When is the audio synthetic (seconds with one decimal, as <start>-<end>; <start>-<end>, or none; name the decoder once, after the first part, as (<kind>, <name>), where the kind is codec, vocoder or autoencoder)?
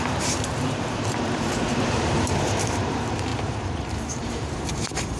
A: 0.0-5.2 (vocoder, BigVGAN v2)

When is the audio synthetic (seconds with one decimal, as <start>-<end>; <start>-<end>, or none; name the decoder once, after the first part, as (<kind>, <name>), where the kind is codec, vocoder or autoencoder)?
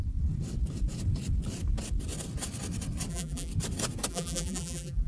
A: 3.1-3.5 (vocoder, BigVGAN v2); 4.1-5.1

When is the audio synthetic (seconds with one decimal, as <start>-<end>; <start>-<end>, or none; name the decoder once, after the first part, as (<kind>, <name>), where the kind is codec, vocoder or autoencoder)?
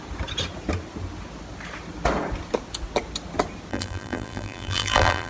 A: 3.7-5.3 (vocoder, BigVGAN v2)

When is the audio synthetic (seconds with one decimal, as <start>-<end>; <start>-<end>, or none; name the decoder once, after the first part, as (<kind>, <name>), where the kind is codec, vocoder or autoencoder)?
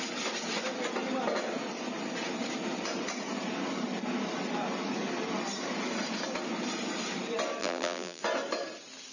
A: 7.6-8.2 (vocoder, BigVGAN v2)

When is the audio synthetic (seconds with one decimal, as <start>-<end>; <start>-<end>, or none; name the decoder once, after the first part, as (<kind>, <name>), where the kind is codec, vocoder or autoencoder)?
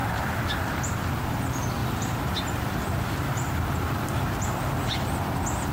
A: 0.0-1.4 (vocoder, BigVGAN v2); 1.8-5.2